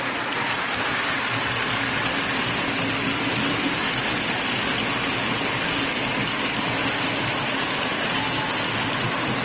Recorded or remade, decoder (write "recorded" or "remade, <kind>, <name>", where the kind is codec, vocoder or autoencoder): recorded